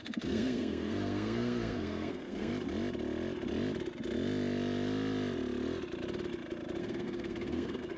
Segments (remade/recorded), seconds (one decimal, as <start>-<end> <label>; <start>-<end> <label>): 0.0-2.5 remade; 2.5-6.8 recorded; 6.8-8.0 remade